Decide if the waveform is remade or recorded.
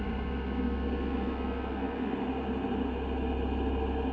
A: recorded